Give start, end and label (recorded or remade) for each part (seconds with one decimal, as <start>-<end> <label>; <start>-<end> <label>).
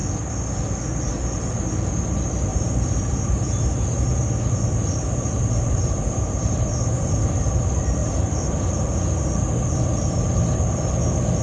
0.0-2.5 recorded; 2.5-7.5 remade; 7.5-8.0 recorded; 8.0-8.8 remade; 8.8-11.4 recorded